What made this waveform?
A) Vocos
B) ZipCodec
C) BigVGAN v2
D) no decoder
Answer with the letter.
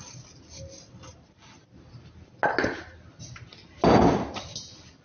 D